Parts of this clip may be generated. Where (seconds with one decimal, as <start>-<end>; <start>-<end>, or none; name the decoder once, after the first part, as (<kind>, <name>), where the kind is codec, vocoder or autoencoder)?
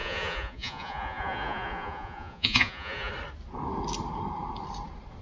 0.0-3.1 (vocoder, Vocos)